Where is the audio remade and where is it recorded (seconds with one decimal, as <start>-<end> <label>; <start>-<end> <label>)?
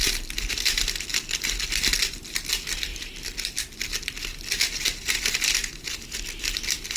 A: 0.0-7.0 recorded